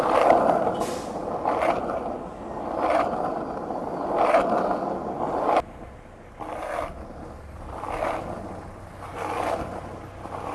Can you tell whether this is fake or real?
real